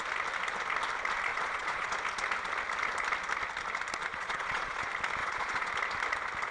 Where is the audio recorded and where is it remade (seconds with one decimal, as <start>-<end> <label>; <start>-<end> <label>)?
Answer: 0.0-1.3 recorded; 1.3-1.9 remade; 1.9-4.1 recorded; 4.1-4.8 remade; 4.8-5.2 recorded; 5.2-5.7 remade; 5.7-6.5 recorded